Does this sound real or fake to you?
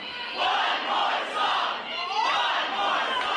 real